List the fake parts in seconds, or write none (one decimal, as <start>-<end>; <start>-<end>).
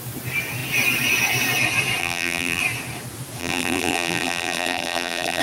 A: 2.0-2.6; 3.4-5.4